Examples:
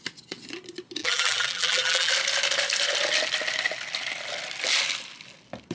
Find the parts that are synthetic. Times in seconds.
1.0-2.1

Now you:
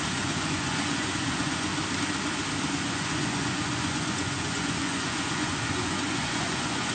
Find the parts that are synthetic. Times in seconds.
0.0-1.7; 2.7-6.9

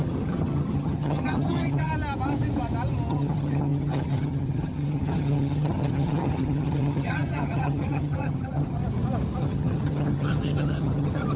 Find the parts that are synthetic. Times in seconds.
0.0-1.9; 3.1-8.8; 9.4-11.4

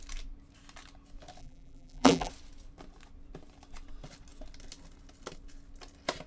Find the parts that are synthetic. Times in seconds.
1.4-2.3

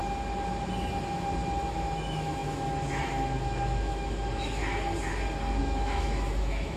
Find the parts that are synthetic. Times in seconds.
1.7-4.6; 5.6-6.8

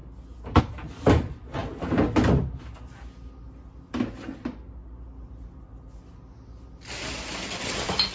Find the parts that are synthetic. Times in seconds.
none

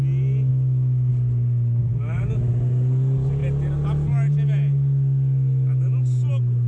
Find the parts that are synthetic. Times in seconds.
0.5-1.1; 1.8-2.5

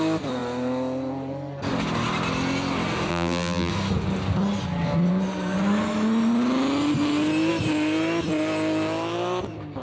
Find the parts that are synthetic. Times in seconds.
3.1-3.7